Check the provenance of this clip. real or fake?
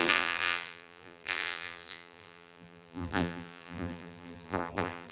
fake